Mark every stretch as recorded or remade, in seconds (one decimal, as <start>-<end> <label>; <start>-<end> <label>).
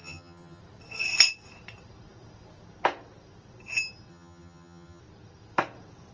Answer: 0.0-0.6 remade; 0.6-4.1 recorded; 4.1-5.0 remade; 5.0-6.1 recorded